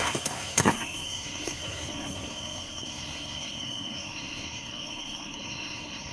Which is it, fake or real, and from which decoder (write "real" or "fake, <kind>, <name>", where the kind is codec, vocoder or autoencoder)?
fake, codec, SNAC